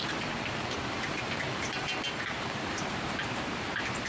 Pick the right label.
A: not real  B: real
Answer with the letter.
A